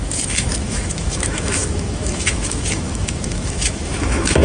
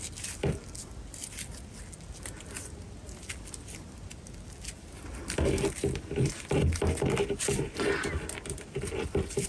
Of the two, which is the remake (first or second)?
first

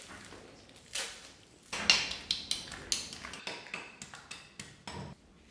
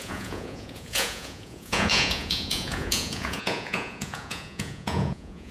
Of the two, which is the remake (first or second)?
second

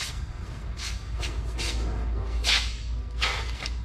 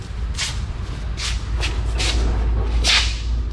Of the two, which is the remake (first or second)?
first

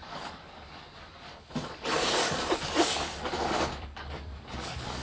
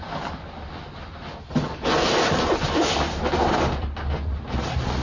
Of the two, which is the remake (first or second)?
first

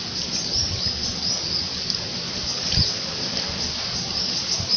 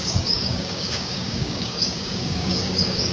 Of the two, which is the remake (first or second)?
second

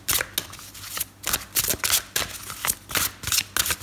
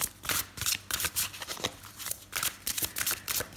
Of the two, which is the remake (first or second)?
second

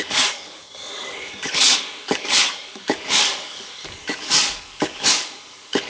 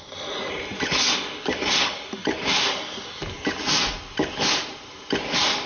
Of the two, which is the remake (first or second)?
first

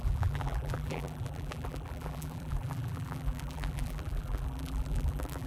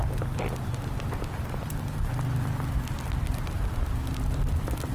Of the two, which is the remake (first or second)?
first